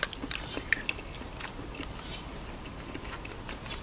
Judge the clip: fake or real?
real